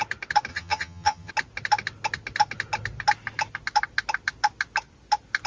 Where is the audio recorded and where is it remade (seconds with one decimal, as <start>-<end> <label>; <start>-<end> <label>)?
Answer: 0.0-0.5 recorded; 0.5-1.3 remade; 1.3-5.5 recorded